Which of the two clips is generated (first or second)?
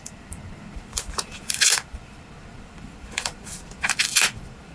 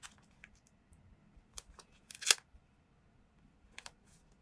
first